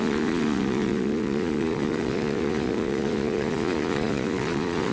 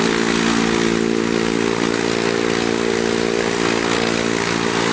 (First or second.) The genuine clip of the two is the second